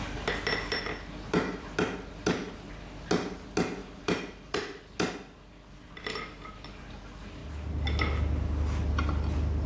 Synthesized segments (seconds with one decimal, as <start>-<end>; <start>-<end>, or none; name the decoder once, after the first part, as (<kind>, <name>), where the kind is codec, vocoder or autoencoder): 3.8-4.8 (vocoder, BigVGAN v2)